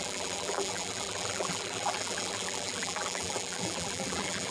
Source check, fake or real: fake